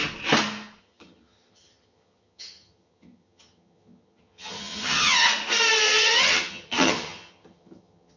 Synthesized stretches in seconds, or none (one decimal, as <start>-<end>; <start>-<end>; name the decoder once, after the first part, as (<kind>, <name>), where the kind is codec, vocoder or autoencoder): 0.8-5.3 (vocoder, HiFi-GAN); 5.8-8.2